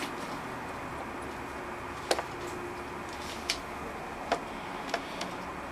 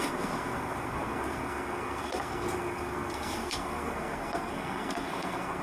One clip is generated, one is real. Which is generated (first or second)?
second